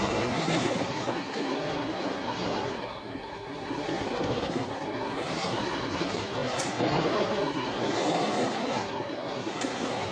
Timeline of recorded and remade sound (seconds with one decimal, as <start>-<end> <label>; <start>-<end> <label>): 0.0-10.1 remade